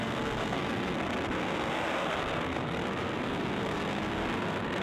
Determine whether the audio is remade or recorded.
remade